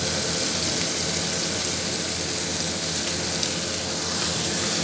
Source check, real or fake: real